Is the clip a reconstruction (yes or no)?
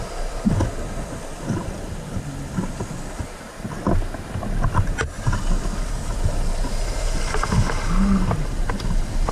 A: no